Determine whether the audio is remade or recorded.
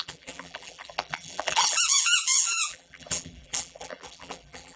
remade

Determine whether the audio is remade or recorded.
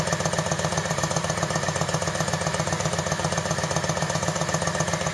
recorded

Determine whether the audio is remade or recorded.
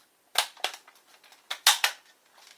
remade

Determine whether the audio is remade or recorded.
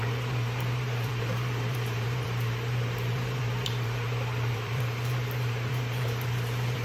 remade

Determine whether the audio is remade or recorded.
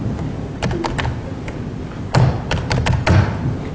recorded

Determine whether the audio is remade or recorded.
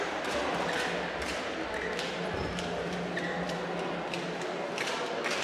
recorded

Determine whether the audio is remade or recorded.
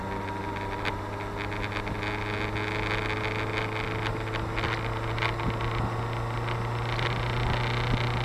recorded